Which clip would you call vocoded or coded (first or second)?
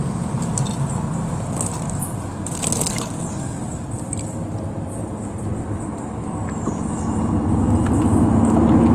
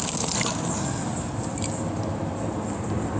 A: second